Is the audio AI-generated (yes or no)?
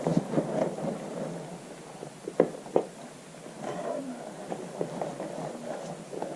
no